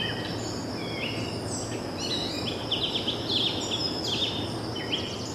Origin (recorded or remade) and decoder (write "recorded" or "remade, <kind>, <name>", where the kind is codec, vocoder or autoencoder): recorded